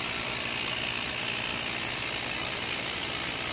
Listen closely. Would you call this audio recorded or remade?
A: recorded